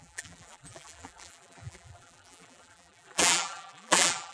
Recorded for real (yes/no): no